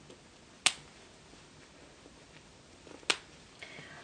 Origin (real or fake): real